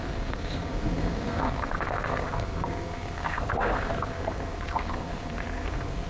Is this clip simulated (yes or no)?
yes